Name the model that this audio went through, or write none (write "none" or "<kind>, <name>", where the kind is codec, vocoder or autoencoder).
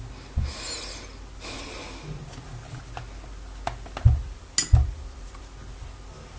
none